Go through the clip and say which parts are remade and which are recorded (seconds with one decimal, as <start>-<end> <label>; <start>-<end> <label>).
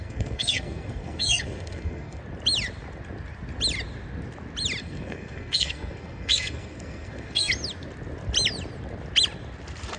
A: 0.0-2.2 remade; 2.2-4.8 recorded; 4.8-7.5 remade; 7.5-10.0 recorded